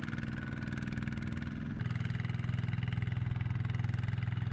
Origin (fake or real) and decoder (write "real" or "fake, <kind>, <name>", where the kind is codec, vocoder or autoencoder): real